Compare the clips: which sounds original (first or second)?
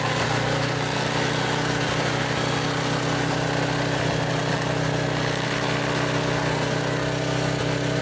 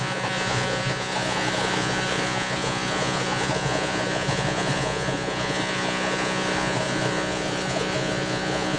first